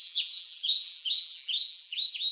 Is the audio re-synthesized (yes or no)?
yes